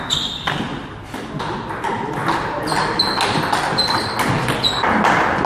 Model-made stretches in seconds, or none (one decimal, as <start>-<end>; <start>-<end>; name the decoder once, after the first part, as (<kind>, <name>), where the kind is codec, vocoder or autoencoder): none